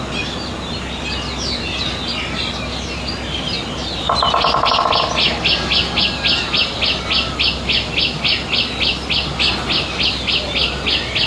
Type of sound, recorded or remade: recorded